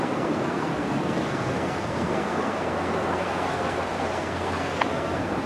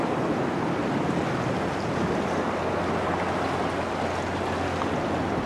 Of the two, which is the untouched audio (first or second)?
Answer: second